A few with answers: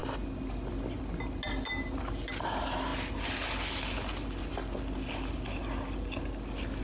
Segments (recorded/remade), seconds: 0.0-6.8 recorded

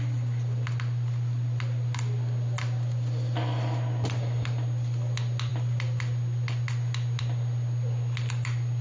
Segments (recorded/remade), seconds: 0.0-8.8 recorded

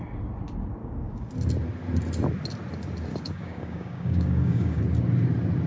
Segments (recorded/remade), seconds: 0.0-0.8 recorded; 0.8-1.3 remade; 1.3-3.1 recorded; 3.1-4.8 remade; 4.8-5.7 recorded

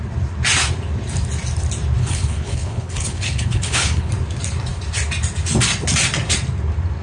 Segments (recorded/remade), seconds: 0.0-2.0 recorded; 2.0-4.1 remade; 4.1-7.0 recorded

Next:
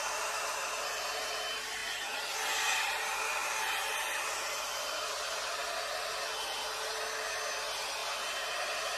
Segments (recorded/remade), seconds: 0.0-9.0 recorded

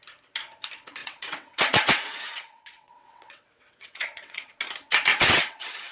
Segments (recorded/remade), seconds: 0.0-1.0 recorded; 1.0-4.5 remade; 4.5-5.1 recorded; 5.1-5.9 remade

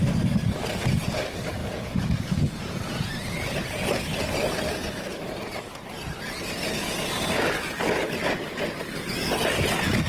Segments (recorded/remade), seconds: 0.0-1.6 recorded; 1.6-3.1 remade; 3.1-10.1 recorded